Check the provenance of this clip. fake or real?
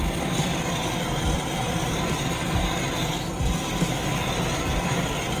fake